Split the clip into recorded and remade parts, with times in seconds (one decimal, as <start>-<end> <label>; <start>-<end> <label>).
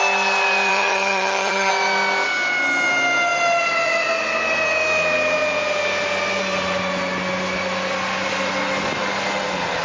0.0-0.7 recorded; 0.7-1.7 remade; 1.7-9.8 recorded